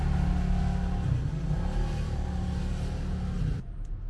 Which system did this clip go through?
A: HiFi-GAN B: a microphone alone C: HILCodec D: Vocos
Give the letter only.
B